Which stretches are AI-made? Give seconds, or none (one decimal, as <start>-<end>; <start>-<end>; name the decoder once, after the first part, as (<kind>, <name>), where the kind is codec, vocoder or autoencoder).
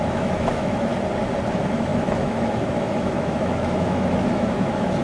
0.0-0.9 (autoencoder, DAC-VAE); 1.5-5.0